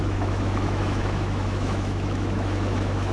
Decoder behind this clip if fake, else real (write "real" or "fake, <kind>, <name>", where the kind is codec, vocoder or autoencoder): fake, autoencoder, DAC-VAE